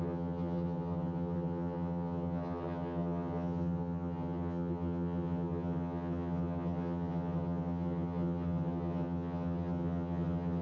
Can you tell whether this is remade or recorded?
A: remade